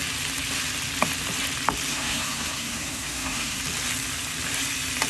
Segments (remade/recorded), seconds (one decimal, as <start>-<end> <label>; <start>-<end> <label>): 0.0-1.9 recorded; 1.9-3.6 remade; 3.6-5.1 recorded